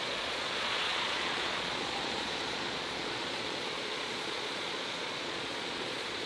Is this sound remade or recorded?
remade